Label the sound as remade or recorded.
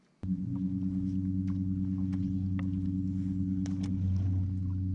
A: recorded